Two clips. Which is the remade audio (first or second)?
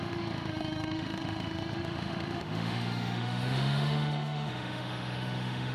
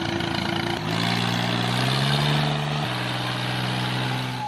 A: first